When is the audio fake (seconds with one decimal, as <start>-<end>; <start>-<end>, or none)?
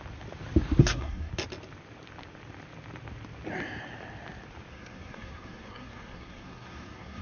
0.8-1.3; 4.7-7.2